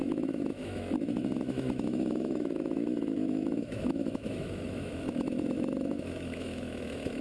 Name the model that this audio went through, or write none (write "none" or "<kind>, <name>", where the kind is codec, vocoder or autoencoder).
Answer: autoencoder, DAC-VAE